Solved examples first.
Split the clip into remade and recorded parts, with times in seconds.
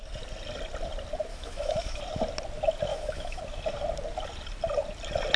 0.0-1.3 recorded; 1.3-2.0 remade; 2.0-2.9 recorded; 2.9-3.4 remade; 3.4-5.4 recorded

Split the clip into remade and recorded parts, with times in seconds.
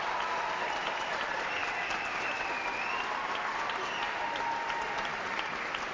0.0-1.6 remade; 1.6-2.9 recorded; 2.9-5.9 remade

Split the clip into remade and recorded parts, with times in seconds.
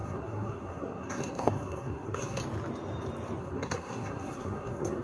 0.0-2.4 remade; 2.4-3.4 recorded; 3.4-5.0 remade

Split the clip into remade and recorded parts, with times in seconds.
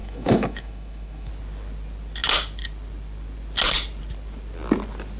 0.0-1.3 remade; 1.3-5.2 recorded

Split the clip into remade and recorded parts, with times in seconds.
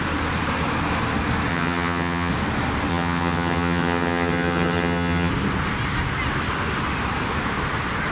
0.0-1.5 recorded; 1.5-2.3 remade; 2.3-2.9 recorded; 2.9-5.3 remade; 5.3-8.1 recorded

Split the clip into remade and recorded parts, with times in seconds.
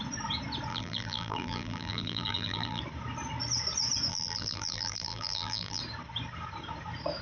0.0-0.7 recorded; 0.7-2.8 remade; 2.8-4.1 recorded; 4.1-5.8 remade; 5.8-7.2 recorded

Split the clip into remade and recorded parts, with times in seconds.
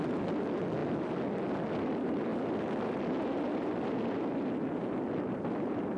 0.0-6.0 recorded